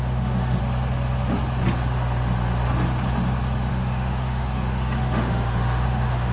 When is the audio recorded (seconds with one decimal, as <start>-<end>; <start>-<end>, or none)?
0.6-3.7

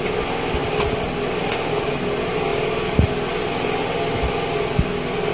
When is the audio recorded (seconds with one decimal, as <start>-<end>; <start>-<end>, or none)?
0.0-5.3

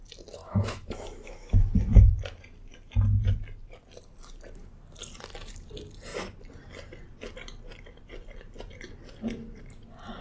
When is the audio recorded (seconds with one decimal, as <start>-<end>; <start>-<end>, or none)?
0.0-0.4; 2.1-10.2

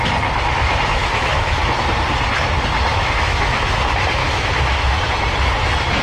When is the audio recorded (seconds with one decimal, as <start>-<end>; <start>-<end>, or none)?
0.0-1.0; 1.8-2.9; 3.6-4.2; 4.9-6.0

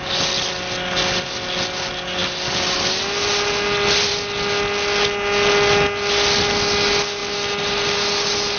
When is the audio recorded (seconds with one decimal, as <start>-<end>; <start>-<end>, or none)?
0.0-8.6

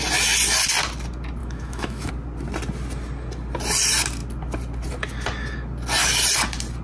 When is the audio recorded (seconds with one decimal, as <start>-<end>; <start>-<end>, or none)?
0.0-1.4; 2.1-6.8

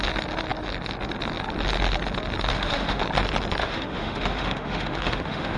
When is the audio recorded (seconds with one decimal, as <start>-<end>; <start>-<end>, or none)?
0.0-2.5; 3.0-3.6